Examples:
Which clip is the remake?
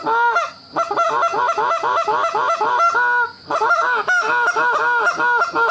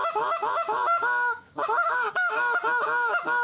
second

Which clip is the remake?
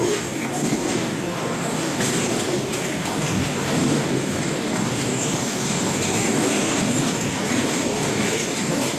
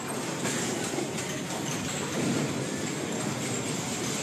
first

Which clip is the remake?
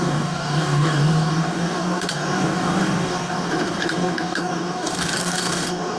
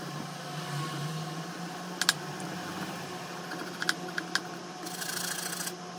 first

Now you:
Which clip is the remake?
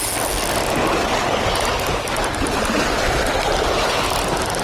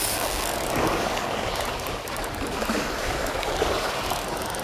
second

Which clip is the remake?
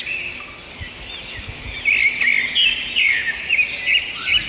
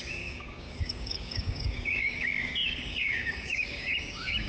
second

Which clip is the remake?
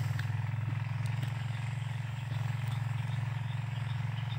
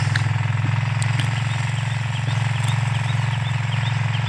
first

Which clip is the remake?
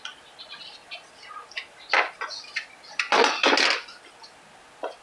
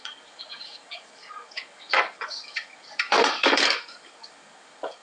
second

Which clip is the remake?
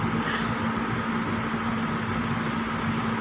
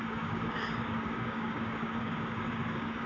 second